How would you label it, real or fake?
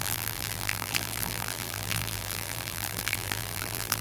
fake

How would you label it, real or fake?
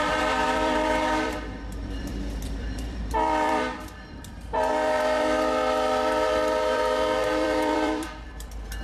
fake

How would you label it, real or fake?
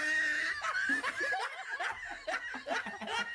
real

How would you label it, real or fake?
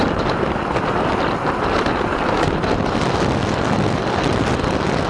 real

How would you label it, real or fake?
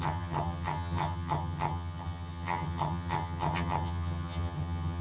fake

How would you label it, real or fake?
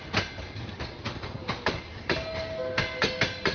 real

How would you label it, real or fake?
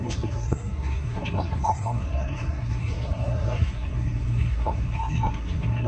fake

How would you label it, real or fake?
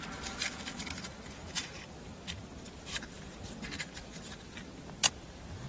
fake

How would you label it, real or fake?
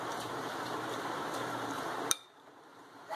fake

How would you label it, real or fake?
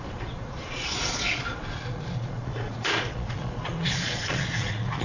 fake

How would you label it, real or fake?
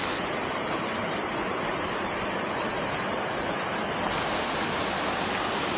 real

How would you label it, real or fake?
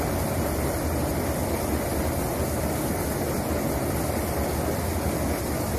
real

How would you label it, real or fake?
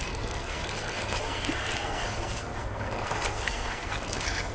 fake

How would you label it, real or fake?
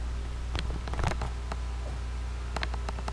real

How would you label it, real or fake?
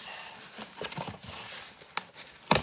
real